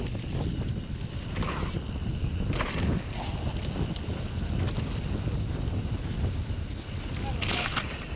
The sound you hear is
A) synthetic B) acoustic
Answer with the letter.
B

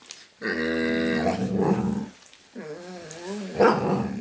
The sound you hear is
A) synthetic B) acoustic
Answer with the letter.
B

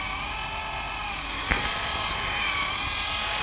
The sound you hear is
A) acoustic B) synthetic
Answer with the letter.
A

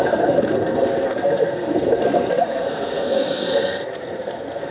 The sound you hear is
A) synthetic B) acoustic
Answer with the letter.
A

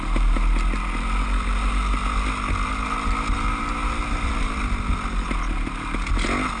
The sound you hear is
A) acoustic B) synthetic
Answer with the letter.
A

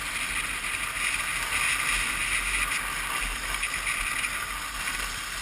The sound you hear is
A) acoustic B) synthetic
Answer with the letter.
A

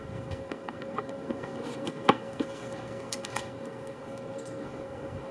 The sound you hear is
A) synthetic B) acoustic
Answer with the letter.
A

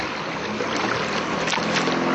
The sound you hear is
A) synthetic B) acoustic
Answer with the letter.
B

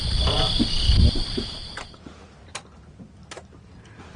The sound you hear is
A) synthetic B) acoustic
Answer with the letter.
B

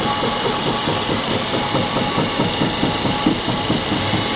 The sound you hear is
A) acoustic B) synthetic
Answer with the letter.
A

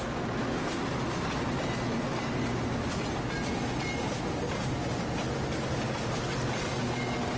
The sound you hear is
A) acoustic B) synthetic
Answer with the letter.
A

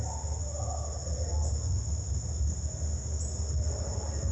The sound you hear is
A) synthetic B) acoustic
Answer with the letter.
B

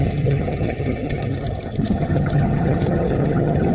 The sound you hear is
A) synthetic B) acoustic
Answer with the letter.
A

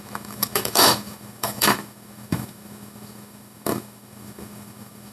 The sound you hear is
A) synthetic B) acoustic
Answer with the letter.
A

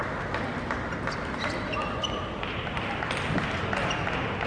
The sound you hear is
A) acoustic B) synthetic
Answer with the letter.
A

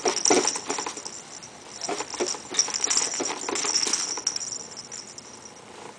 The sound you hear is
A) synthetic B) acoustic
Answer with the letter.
B